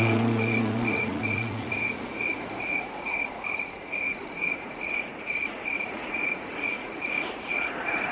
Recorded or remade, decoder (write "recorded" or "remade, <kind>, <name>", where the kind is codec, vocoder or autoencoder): remade, vocoder, Vocos